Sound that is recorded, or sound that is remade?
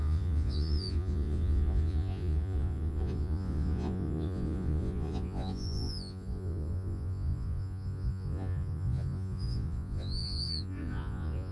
remade